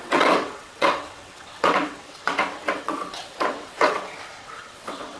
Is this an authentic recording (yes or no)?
no